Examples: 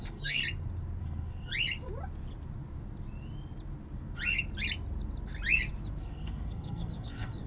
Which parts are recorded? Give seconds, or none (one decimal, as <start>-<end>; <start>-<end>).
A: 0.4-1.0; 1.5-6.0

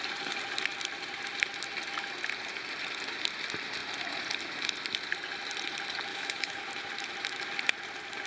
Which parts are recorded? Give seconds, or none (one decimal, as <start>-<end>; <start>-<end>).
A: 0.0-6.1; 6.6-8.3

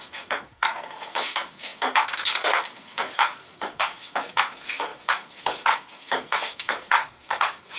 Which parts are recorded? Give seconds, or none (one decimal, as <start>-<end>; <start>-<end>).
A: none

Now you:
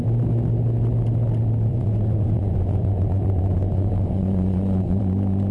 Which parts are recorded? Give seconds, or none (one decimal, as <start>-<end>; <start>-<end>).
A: 0.0-1.7; 5.0-5.5

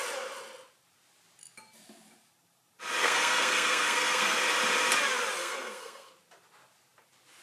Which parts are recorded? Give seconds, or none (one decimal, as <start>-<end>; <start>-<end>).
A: 0.0-3.0; 4.4-5.4; 6.1-7.4

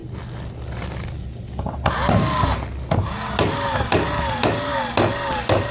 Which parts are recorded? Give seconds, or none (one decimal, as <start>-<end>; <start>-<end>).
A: 0.0-5.7

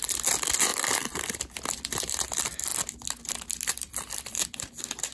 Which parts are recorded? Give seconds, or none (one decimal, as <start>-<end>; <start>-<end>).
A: 2.7-3.7